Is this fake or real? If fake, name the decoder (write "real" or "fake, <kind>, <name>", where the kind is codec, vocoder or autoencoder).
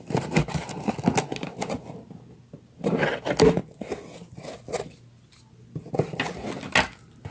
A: real